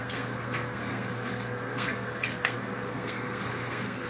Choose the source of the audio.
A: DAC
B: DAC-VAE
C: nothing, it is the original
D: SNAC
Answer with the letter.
D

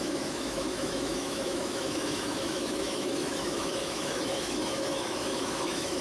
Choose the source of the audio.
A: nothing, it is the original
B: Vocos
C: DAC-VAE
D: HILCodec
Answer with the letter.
C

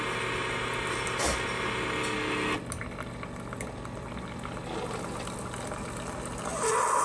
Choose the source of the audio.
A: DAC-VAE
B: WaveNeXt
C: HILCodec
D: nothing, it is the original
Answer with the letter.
D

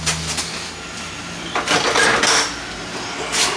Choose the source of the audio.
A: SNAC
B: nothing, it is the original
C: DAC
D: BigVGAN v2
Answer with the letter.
B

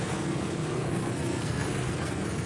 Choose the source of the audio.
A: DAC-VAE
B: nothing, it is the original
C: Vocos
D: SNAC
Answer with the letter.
D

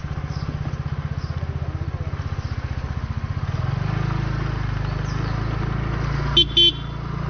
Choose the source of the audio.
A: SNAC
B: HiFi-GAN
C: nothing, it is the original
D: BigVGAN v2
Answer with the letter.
C